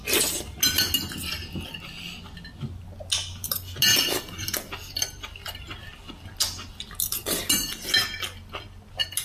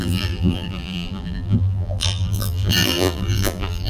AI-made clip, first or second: second